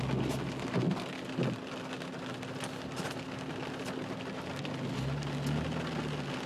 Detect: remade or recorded recorded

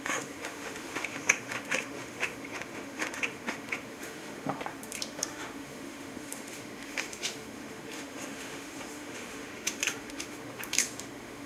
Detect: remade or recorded remade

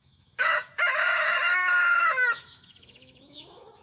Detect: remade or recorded remade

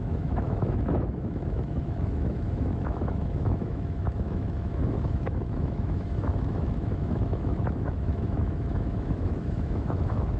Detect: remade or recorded remade